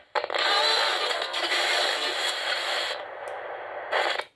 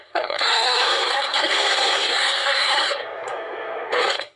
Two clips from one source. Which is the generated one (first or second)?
second